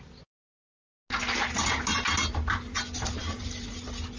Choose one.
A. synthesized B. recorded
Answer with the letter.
B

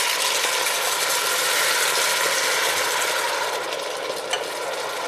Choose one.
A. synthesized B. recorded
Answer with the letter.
B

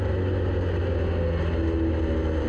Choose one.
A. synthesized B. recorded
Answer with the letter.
B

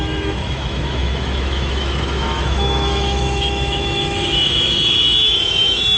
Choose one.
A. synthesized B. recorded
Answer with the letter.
A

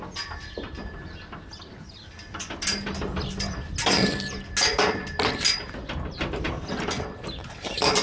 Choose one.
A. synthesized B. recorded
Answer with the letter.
B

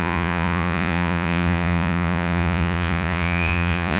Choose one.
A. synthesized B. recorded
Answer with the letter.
A